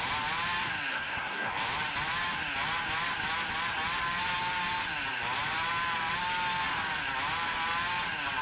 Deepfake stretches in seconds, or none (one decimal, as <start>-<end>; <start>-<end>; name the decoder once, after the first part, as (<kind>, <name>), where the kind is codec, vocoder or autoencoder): 0.9-1.5 (codec, SNAC)